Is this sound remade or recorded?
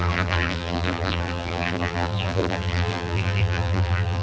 remade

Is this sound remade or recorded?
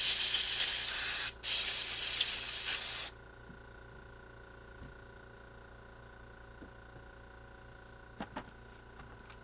recorded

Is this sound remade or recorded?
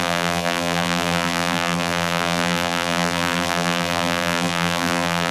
remade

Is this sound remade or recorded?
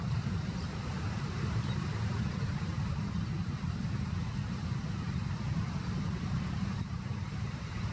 remade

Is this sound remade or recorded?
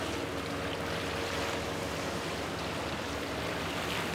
recorded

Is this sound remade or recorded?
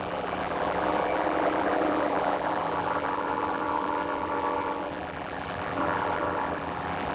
remade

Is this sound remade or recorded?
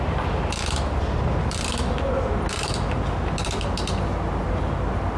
recorded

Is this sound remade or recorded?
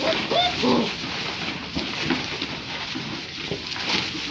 recorded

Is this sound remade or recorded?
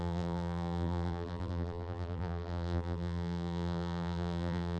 remade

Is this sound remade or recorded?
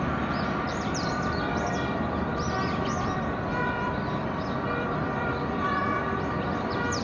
remade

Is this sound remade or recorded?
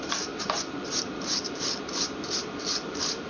remade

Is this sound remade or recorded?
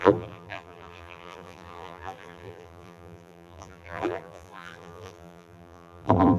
remade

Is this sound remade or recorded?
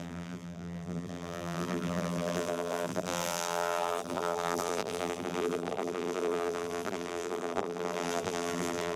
remade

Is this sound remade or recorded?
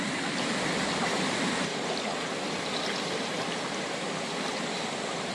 remade